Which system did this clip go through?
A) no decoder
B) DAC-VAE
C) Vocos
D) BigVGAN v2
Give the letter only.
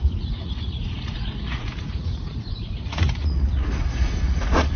C